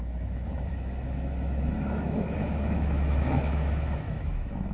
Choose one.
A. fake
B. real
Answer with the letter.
A